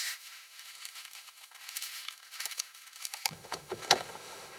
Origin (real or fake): fake